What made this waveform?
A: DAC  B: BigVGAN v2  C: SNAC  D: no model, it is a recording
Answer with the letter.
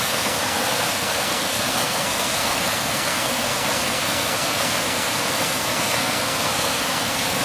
C